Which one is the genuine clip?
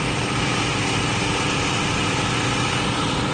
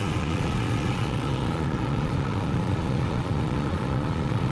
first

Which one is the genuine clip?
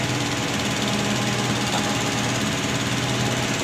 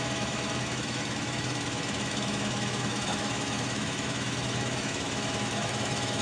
first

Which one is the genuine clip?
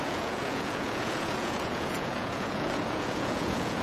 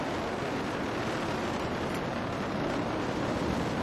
second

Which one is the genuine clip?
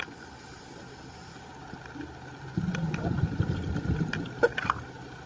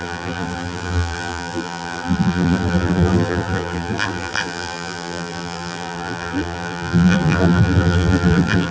first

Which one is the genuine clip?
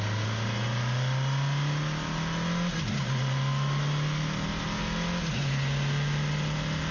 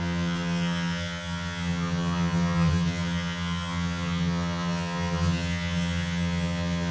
first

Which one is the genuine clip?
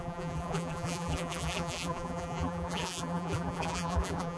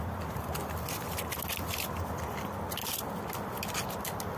second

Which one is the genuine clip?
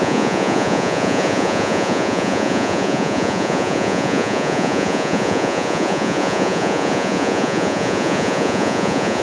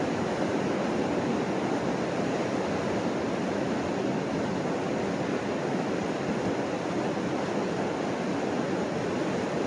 second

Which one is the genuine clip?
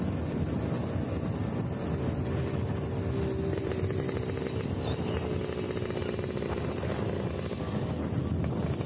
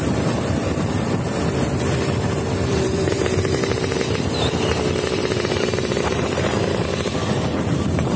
first